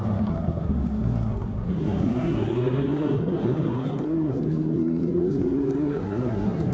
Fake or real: fake